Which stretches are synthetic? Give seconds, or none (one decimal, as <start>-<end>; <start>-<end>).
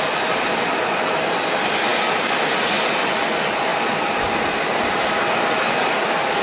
none